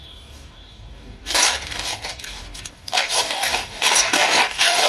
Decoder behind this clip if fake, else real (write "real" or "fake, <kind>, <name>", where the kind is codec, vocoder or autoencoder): fake, codec, DAC